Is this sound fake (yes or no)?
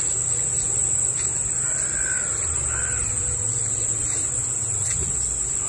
no